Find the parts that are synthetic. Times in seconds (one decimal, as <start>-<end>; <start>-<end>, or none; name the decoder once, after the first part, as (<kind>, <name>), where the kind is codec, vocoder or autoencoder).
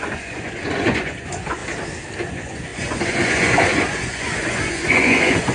0.0-1.6 (vocoder, Vocos); 2.2-5.5